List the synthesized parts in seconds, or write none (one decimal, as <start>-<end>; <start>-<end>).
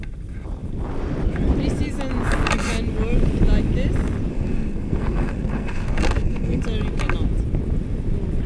4.3-6.6